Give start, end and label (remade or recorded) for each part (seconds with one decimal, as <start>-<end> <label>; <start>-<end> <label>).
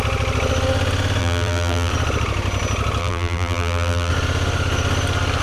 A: 0.0-1.2 recorded; 1.2-1.9 remade; 1.9-3.0 recorded; 3.0-4.1 remade; 4.1-5.4 recorded